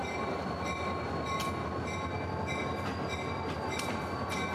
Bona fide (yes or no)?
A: yes